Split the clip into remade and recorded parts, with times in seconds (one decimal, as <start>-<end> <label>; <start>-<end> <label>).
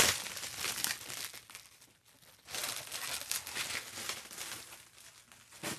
0.0-5.8 recorded